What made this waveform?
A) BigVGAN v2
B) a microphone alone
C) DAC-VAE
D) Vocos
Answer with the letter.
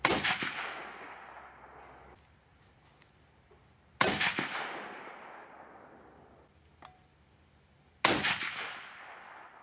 B